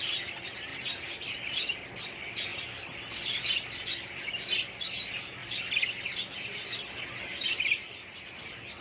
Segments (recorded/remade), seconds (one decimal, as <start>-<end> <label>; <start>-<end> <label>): 0.0-8.8 recorded